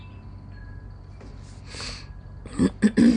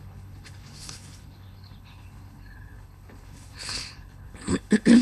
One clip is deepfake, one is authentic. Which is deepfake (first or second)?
second